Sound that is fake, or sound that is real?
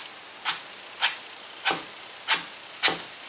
real